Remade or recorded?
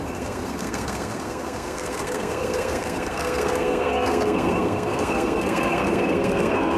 remade